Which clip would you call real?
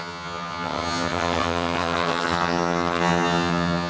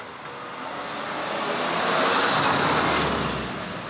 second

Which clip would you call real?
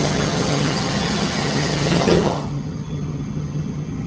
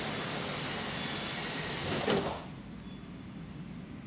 second